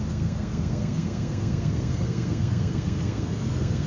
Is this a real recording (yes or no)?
no